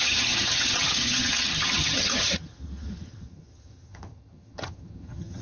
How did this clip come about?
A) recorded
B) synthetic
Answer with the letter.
B